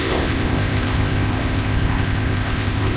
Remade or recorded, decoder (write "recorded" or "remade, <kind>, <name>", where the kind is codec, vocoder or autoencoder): remade, codec, ZipCodec